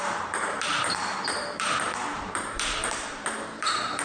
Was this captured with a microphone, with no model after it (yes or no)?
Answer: no